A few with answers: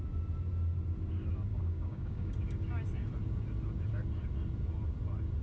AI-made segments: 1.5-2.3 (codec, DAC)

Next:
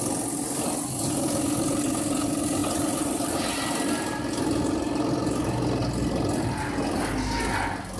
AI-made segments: 2.6-3.3 (vocoder, BigVGAN v2)

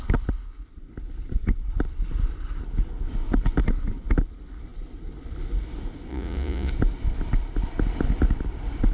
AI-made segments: 6.1-6.7 (vocoder, Vocos)

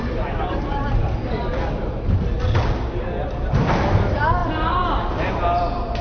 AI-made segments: none